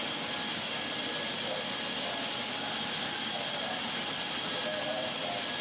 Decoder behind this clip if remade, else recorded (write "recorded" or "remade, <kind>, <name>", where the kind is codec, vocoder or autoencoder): recorded